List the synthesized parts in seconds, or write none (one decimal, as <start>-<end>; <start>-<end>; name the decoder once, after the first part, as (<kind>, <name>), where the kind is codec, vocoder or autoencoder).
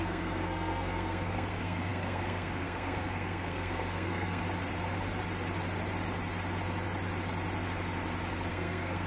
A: 0.0-4.4 (codec, SNAC); 8.5-9.1